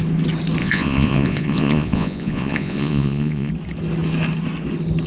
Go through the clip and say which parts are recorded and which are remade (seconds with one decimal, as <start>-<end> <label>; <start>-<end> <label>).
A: 0.0-0.6 recorded; 0.6-3.5 remade; 3.5-5.1 recorded